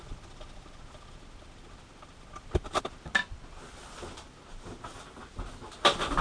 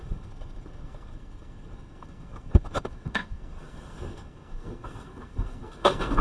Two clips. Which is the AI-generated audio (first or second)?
second